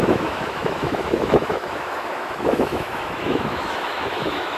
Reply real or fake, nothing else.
fake